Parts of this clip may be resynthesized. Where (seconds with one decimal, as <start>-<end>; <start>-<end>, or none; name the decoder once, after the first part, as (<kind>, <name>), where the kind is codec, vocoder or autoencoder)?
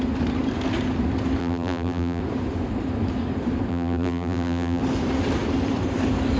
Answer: 1.4-2.2 (vocoder, BigVGAN v2); 3.7-4.8